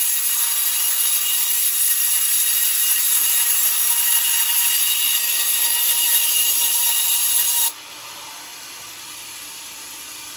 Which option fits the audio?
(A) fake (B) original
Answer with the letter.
A